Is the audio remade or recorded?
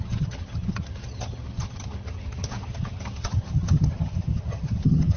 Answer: remade